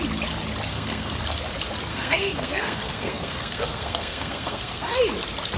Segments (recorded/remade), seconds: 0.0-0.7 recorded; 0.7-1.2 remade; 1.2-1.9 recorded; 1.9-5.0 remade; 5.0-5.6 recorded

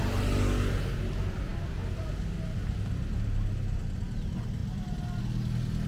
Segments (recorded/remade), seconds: 0.0-5.9 recorded

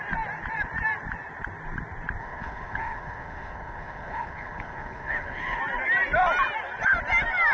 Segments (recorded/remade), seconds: 0.0-2.2 recorded; 2.2-5.6 remade; 5.6-7.5 recorded

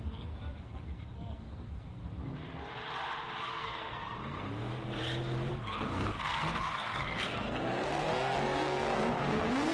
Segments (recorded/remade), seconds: 0.0-2.0 remade; 2.0-3.5 recorded; 3.5-4.7 remade; 4.7-5.5 recorded; 5.5-9.7 remade

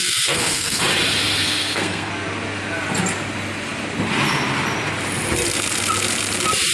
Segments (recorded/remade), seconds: 0.0-0.8 remade; 0.8-1.4 recorded; 1.4-2.1 remade; 2.1-6.7 recorded

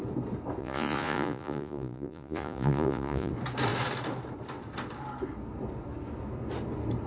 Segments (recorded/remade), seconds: 0.0-0.6 recorded; 0.6-3.3 remade; 3.3-7.1 recorded